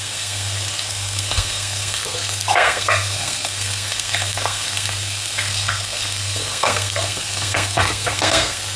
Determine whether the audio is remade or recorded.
remade